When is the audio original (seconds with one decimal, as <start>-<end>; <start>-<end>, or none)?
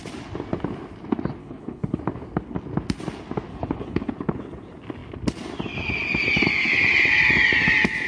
0.0-1.4; 2.0-3.5; 4.1-8.1